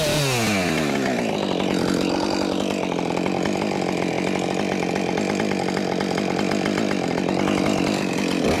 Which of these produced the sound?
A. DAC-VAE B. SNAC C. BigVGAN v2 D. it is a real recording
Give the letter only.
D